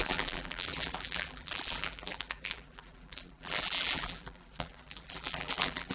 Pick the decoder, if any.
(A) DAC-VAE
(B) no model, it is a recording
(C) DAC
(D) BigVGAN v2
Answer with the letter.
D